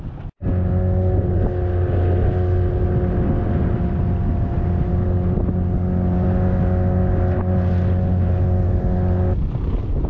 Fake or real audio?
real